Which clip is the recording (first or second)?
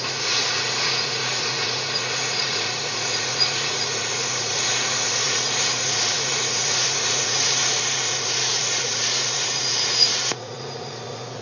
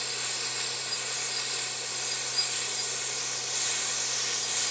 second